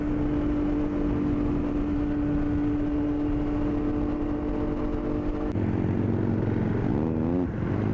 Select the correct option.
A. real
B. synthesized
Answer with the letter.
A